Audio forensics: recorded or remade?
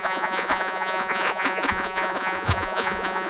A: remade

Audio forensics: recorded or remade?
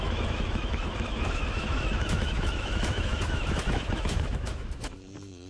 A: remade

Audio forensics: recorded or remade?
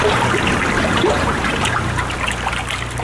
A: recorded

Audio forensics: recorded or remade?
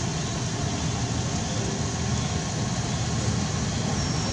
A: recorded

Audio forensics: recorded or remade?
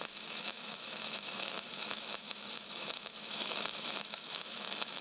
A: remade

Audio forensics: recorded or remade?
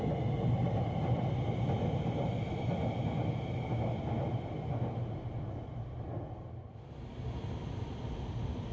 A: recorded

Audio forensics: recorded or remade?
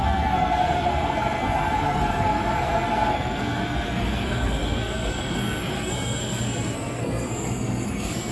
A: remade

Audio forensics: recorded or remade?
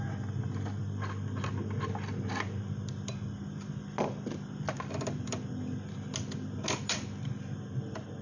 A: recorded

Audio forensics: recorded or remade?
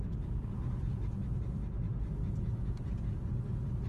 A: recorded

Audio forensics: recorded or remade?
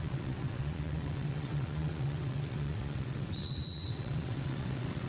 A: remade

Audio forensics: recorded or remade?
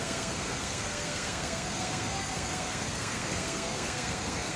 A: remade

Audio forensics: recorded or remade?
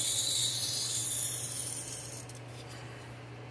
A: recorded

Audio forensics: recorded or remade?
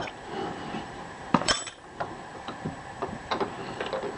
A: remade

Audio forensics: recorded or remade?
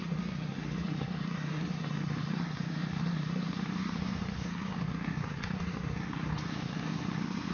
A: remade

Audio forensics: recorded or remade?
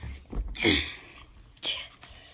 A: recorded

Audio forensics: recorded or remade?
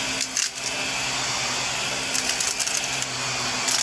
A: recorded